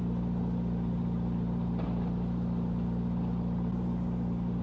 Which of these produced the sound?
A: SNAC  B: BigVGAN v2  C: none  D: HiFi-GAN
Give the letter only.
C